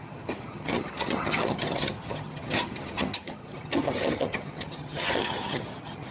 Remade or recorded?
remade